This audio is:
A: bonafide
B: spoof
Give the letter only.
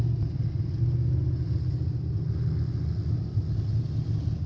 A